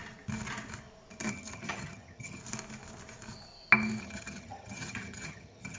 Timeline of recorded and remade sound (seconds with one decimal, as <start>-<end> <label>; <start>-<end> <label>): 0.0-1.3 recorded; 1.3-2.4 remade; 2.4-4.0 recorded; 4.0-5.8 remade